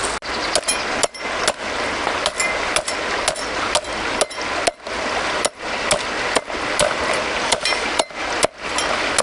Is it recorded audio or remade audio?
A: recorded